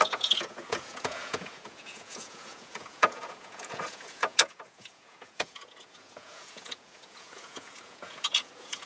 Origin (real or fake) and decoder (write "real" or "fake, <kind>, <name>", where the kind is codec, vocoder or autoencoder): fake, vocoder, Vocos